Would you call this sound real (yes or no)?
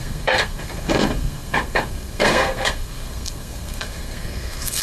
no